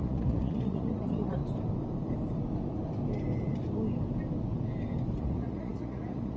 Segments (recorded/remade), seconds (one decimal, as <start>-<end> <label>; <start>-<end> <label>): 0.0-1.4 remade; 1.4-5.2 recorded; 5.2-6.4 remade